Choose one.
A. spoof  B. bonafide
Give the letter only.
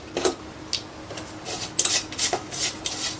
B